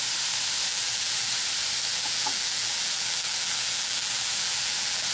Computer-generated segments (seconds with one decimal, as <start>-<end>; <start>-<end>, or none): 0.7-1.3; 1.9-5.1